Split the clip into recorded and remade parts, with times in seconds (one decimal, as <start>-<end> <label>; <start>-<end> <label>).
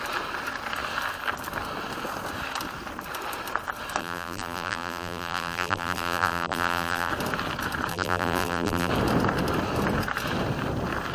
0.0-4.0 recorded; 4.0-7.1 remade; 7.1-7.9 recorded; 7.9-8.9 remade; 8.9-11.1 recorded